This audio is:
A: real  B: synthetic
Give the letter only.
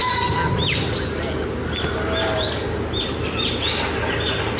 A